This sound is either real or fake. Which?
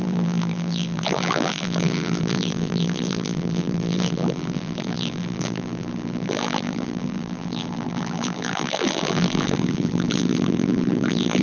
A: fake